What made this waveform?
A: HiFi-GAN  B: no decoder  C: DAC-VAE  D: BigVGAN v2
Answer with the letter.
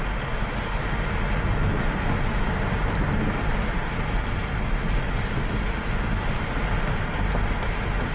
B